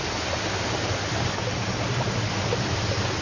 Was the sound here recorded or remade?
recorded